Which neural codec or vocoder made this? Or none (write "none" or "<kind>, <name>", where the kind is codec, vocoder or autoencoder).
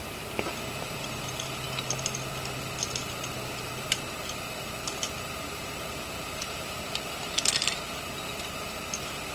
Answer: none